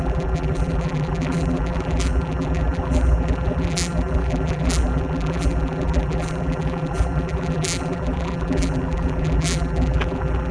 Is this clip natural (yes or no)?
no